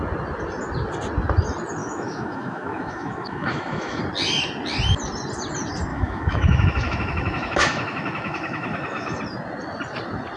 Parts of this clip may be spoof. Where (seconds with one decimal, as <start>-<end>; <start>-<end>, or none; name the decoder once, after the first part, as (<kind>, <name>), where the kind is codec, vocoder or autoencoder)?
1.8-4.0 (autoencoder, DAC-VAE); 5.9-9.2